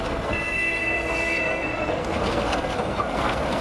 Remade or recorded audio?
remade